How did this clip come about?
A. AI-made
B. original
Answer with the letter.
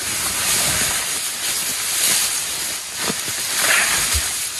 B